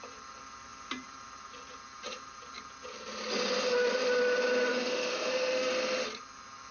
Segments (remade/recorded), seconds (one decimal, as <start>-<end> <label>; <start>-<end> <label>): 0.0-4.7 recorded; 4.7-5.7 remade; 5.7-6.7 recorded